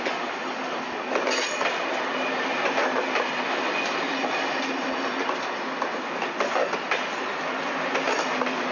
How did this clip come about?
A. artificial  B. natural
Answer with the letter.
B